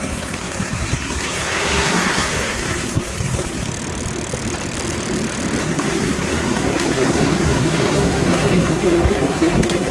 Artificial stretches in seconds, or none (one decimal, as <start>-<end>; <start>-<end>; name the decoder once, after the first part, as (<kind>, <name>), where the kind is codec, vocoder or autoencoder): 0.0-3.7 (codec, SNAC); 5.6-9.9